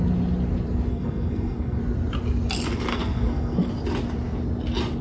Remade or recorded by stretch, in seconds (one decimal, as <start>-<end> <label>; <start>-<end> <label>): 0.0-0.9 recorded; 0.9-1.8 remade; 1.8-2.9 recorded; 2.9-3.7 remade; 3.7-5.0 recorded